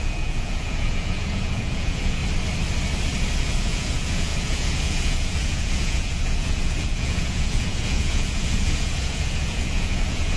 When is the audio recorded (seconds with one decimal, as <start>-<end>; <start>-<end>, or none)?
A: 2.2-3.4